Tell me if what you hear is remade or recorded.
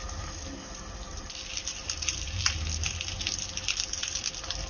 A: recorded